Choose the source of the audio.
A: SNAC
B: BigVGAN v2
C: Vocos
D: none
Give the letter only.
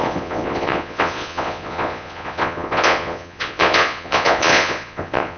C